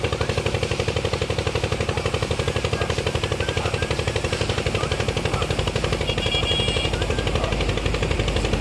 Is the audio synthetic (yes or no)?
no